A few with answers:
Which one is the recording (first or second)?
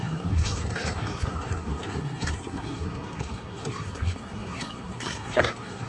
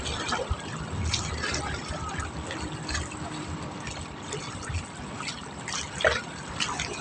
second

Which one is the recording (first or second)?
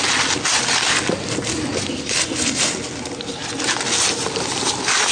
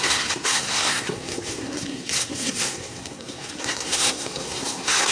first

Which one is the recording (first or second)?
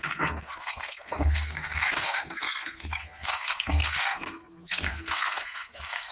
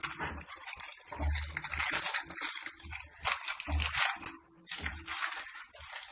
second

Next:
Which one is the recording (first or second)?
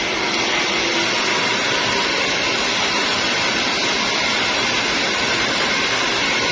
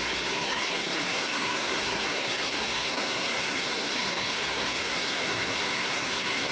first